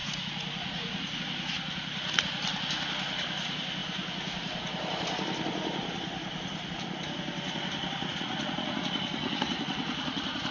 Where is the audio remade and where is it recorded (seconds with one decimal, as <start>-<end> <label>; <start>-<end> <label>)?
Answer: 0.0-1.2 remade; 1.2-8.1 recorded; 8.1-10.5 remade